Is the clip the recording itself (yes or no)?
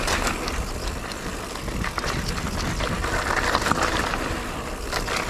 yes